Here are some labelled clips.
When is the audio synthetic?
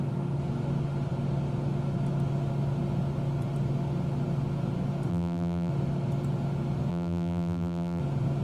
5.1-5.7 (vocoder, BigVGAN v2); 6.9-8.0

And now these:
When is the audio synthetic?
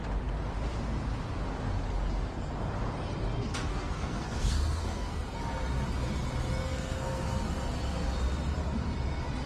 3.5-5.4 (codec, SNAC); 6.6-7.4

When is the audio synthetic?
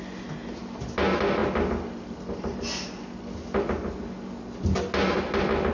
none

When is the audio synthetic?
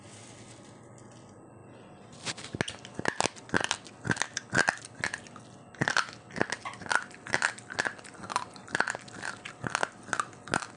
none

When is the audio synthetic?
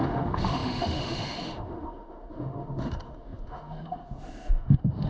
0.0-5.1 (autoencoder, DAC-VAE)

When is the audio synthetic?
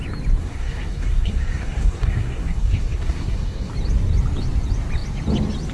0.4-3.7 (codec, SNAC)